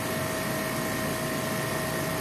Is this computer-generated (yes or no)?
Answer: no